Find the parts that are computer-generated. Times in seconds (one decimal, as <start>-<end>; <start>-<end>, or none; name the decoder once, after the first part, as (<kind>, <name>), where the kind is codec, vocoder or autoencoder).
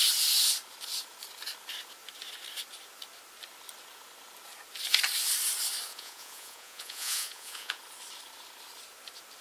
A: 5.9-7.8 (vocoder, Vocos)